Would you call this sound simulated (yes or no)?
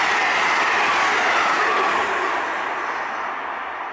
no